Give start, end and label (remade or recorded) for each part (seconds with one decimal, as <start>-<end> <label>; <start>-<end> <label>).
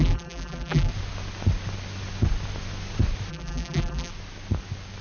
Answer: 0.0-0.9 remade; 0.9-3.3 recorded; 3.3-4.1 remade; 4.1-5.0 recorded